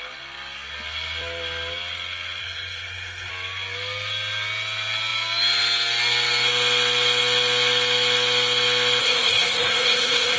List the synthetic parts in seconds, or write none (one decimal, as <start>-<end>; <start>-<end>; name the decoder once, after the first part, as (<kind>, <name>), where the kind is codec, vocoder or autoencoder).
2.4-3.3 (codec, SNAC); 9.0-10.4